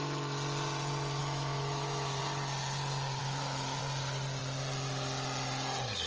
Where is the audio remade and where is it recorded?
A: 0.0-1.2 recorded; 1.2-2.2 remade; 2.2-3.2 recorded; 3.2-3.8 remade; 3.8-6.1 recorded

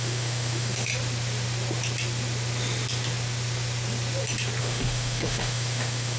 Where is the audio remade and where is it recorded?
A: 0.0-0.9 remade; 0.9-4.6 recorded; 4.6-6.2 remade

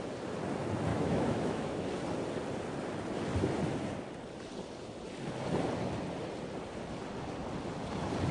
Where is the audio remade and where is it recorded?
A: 0.0-0.9 recorded; 0.9-1.9 remade; 1.9-8.3 recorded

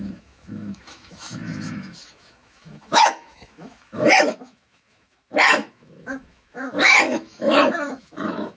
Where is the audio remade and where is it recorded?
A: 0.0-8.6 remade

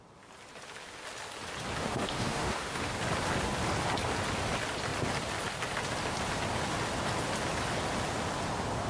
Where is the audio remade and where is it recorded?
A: 0.0-1.8 recorded; 1.8-2.9 remade; 2.9-8.9 recorded